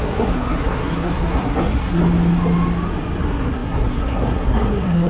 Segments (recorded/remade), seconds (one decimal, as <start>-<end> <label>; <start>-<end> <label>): 0.0-2.0 remade; 2.0-3.2 recorded; 3.2-5.1 remade